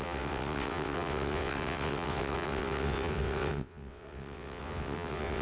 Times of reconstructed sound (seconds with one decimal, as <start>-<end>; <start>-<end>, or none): 0.0-5.4